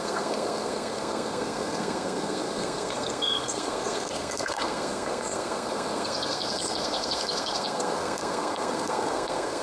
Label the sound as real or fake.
fake